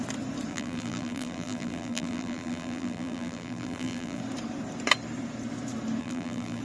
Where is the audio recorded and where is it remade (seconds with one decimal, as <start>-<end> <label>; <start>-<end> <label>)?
0.0-0.5 recorded; 0.5-4.2 remade; 4.2-6.0 recorded; 6.0-6.6 remade